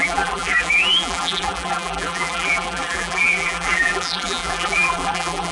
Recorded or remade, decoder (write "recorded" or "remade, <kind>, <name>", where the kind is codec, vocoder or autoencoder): remade, vocoder, BigVGAN v2